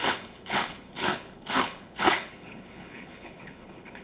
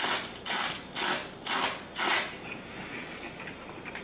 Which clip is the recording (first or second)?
second